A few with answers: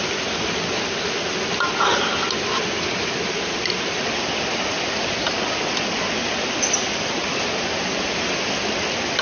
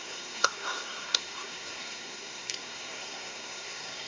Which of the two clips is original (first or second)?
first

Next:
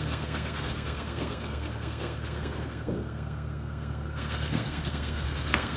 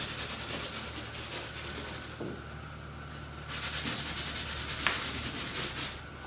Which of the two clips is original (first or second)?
second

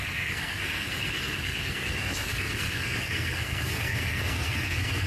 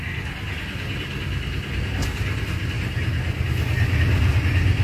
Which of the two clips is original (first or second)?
second